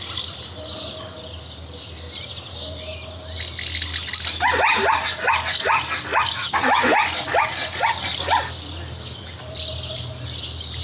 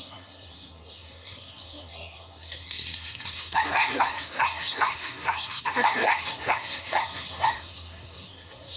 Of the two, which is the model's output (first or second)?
second